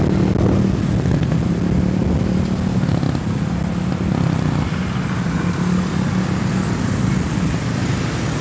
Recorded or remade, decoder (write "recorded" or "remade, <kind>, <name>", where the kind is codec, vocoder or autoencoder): recorded